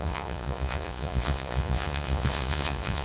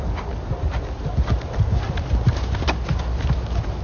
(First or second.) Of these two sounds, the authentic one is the second